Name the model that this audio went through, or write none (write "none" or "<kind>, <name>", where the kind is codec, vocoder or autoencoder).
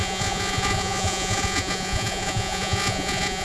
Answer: vocoder, Vocos